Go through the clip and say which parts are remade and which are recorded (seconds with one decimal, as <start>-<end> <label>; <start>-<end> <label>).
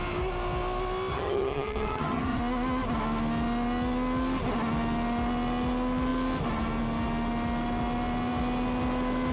0.0-1.1 recorded; 1.1-2.4 remade; 2.4-9.3 recorded